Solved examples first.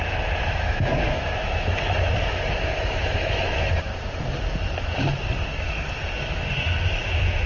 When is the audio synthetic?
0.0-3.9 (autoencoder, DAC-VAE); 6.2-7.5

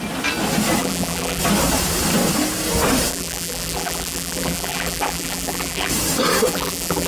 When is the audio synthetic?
0.8-1.4 (vocoder, BigVGAN v2); 3.1-5.9; 6.5-7.1

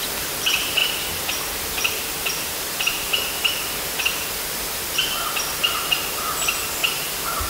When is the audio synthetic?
0.8-4.3 (vocoder, BigVGAN v2)

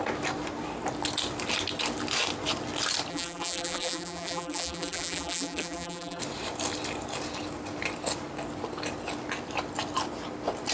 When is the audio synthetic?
3.1-6.2 (vocoder, BigVGAN v2)

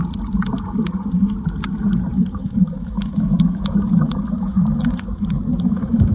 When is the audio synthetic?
2.4-6.1 (autoencoder, DAC-VAE)